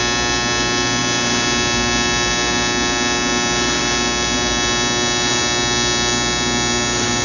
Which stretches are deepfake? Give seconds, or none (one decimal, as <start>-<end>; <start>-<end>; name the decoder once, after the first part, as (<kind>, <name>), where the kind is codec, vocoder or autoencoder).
none